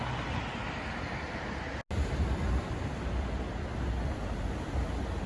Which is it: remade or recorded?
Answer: recorded